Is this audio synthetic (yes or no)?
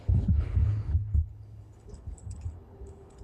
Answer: yes